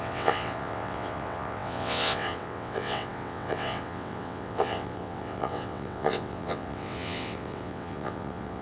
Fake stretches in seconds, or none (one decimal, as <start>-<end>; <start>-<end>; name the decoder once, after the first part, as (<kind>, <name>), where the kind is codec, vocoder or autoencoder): 0.0-8.6 (vocoder, WaveNeXt)